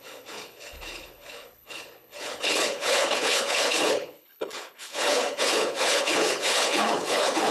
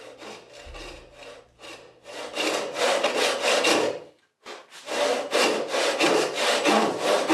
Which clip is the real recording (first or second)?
second